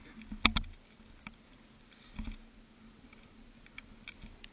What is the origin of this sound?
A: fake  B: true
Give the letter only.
B